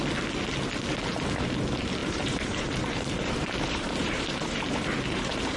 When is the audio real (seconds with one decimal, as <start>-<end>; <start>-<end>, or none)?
0.0-2.0